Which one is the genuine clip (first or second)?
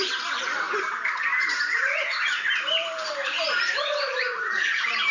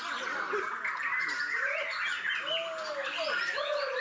second